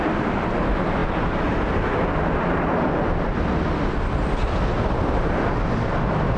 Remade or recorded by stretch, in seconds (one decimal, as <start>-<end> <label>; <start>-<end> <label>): 0.0-6.4 recorded